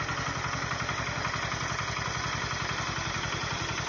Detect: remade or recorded recorded